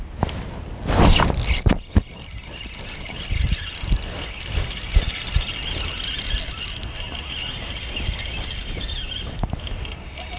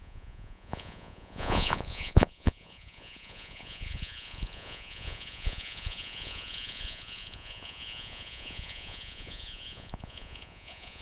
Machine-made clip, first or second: second